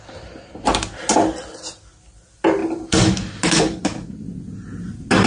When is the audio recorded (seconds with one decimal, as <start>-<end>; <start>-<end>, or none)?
0.0-5.3